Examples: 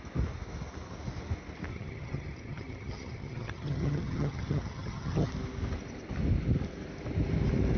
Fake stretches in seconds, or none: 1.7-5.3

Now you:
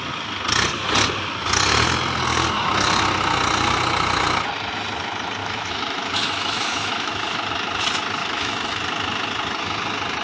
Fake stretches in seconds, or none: 5.4-7.5; 8.2-8.8

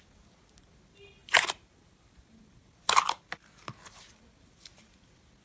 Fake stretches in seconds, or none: 1.2-2.4

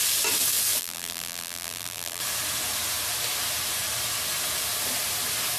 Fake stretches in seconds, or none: 0.8-2.2

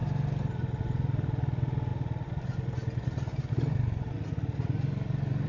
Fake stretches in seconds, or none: none

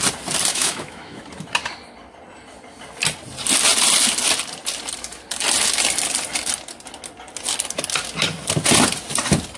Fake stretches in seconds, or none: 0.5-1.2

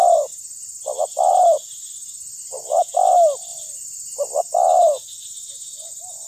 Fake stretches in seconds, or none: 2.6-3.1